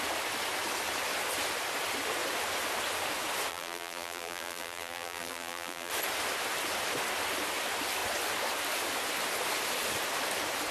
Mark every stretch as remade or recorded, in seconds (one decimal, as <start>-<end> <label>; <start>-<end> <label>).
0.0-3.5 recorded; 3.5-5.9 remade; 5.9-10.7 recorded